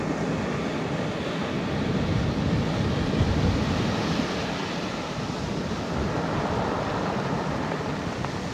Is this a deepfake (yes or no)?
no